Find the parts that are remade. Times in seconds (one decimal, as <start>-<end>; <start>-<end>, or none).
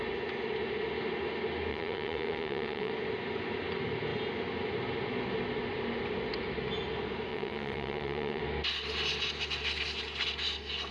1.7-2.9; 7.3-8.4